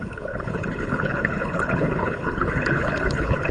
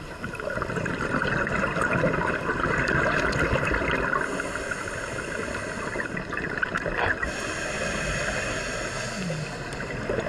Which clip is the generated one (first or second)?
first